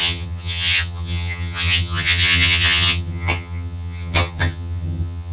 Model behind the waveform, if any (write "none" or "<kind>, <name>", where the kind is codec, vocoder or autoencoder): vocoder, HiFi-GAN